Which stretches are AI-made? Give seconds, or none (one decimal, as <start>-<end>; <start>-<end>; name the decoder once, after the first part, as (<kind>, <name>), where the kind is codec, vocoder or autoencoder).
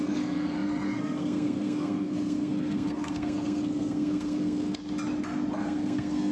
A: 0.0-4.8 (codec, SNAC); 5.6-6.3